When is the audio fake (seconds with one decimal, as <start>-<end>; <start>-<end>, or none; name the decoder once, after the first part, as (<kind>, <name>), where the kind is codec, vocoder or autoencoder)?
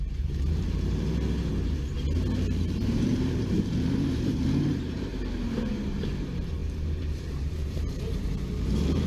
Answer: 0.0-1.5 (vocoder, BigVGAN v2); 2.5-5.1; 6.1-9.1